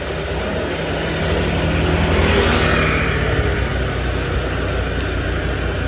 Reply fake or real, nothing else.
real